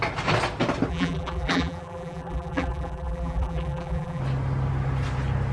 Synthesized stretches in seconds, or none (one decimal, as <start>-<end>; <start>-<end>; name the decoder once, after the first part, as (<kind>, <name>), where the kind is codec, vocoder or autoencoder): 0.9-4.2 (vocoder, BigVGAN v2)